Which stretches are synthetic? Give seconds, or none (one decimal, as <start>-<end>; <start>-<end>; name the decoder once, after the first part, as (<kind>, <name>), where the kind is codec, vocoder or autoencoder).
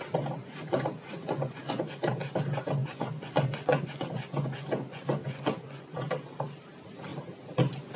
0.4-1.9 (vocoder, Vocos); 2.8-6.0